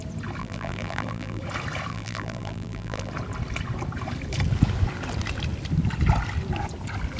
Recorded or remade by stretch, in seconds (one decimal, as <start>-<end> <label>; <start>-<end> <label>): 0.0-0.4 recorded; 0.4-1.4 remade; 1.4-1.9 recorded; 1.9-3.1 remade; 3.1-7.2 recorded